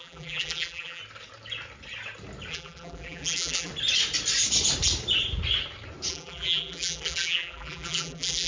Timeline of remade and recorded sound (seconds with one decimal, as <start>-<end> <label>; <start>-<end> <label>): 0.0-1.0 remade; 1.0-2.5 recorded; 2.5-3.7 remade; 3.7-6.1 recorded; 6.1-8.5 remade